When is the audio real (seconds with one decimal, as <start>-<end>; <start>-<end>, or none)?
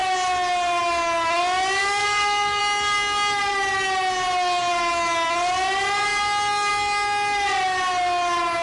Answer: 0.0-1.8; 2.6-8.6